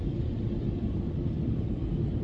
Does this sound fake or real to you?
real